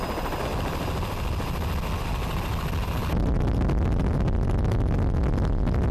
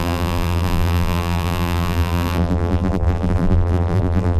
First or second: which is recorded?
first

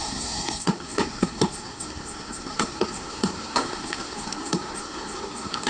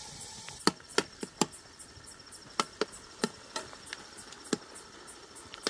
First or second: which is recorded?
second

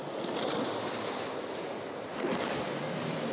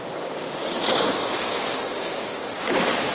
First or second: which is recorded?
first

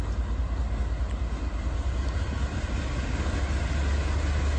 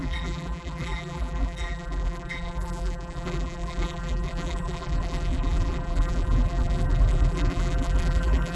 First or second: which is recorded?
first